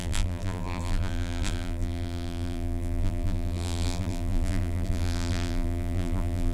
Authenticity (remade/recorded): remade